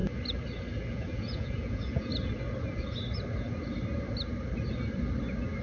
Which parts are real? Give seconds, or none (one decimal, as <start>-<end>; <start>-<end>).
0.0-0.9; 2.1-5.6